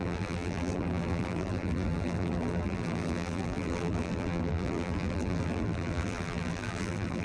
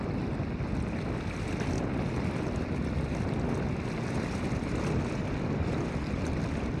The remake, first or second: first